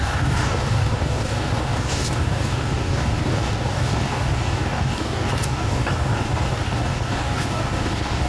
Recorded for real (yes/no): no